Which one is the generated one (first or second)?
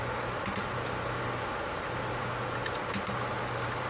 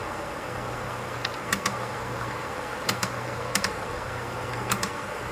second